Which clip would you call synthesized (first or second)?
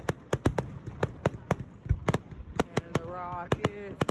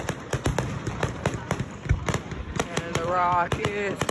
second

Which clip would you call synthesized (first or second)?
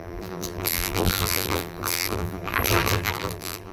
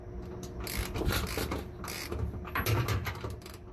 first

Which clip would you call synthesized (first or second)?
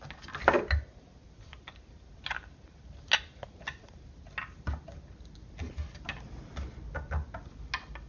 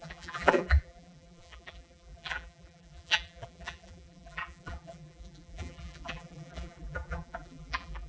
second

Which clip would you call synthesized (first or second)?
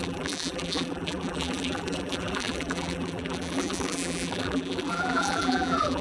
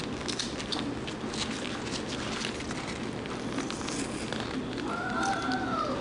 first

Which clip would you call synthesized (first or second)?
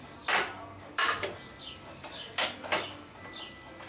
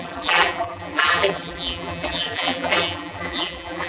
second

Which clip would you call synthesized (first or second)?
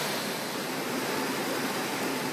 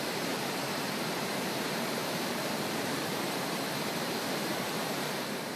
second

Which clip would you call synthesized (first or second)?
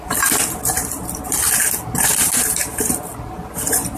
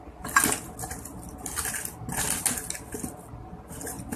first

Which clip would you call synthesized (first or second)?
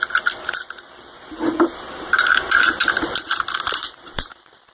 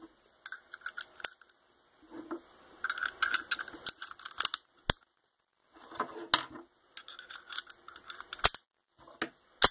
first